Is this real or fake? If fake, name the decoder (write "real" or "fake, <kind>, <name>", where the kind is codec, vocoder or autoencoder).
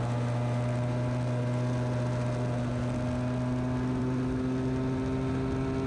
real